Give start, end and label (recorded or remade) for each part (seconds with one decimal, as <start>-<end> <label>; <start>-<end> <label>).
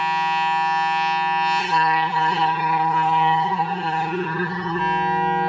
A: 0.0-1.6 recorded; 1.6-4.8 remade; 4.8-5.5 recorded